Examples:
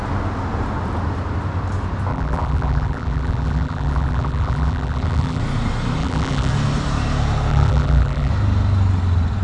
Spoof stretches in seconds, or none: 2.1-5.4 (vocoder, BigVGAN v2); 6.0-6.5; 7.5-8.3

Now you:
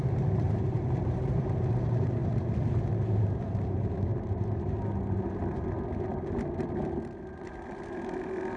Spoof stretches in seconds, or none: 0.0-2.2 (vocoder, BigVGAN v2); 2.9-4.1

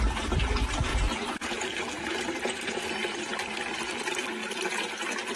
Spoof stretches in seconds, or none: 0.9-2.8 (vocoder, BigVGAN v2)

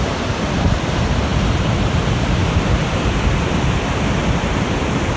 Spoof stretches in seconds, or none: 2.4-4.8 (vocoder, BigVGAN v2)

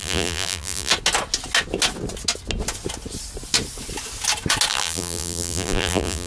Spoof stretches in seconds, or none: 0.0-0.9 (vocoder, BigVGAN v2); 4.7-6.3

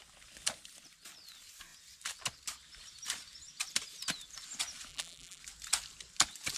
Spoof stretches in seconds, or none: 4.9-5.4 (vocoder, BigVGAN v2)